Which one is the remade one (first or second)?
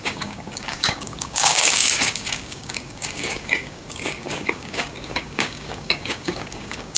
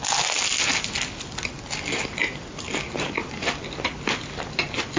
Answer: first